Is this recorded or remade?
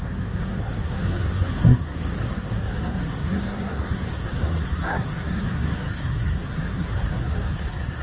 remade